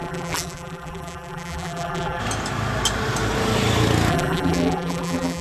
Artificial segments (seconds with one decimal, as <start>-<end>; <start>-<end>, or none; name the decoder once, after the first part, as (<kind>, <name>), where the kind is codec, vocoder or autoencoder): 0.0-2.2 (vocoder, BigVGAN v2); 4.1-5.4